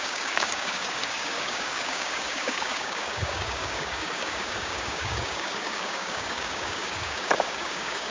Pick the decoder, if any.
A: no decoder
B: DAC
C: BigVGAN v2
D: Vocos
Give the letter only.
B